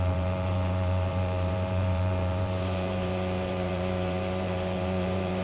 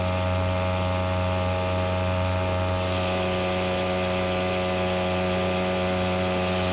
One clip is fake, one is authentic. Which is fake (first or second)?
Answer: first